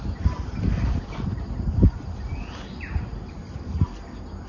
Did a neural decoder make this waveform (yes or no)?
no